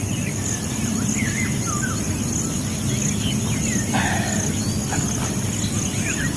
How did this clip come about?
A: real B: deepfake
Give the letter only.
A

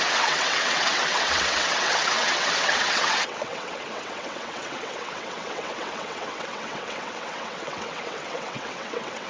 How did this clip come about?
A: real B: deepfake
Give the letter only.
B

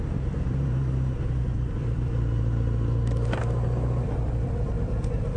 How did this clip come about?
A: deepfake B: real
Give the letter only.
B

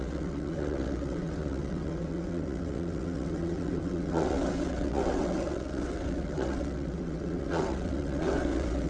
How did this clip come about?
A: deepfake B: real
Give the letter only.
A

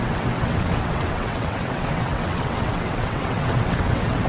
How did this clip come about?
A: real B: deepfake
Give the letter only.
B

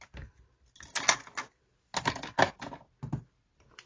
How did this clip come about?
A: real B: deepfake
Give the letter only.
A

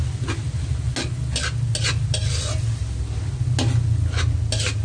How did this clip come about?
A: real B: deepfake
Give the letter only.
A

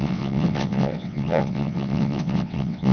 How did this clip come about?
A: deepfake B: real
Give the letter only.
A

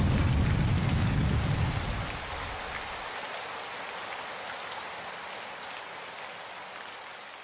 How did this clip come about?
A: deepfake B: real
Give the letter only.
B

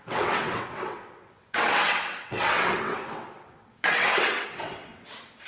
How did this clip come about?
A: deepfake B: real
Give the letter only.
A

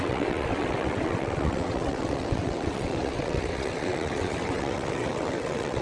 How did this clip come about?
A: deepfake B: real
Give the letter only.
A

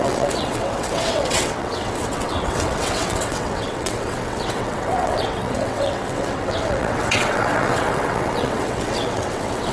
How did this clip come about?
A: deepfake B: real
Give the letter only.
A